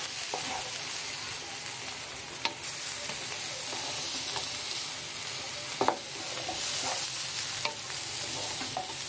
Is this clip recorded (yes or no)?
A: yes